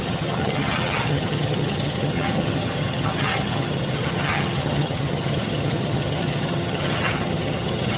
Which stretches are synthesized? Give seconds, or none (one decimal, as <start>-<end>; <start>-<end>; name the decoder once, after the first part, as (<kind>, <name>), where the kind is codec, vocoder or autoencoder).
0.0-8.0 (vocoder, HiFi-GAN)